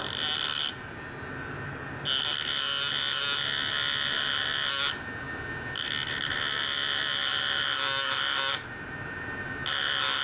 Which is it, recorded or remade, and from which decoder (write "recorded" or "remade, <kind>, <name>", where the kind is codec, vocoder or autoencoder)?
recorded